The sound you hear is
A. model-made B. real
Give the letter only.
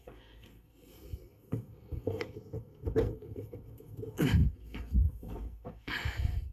A